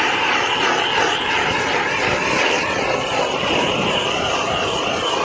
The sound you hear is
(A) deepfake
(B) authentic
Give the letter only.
B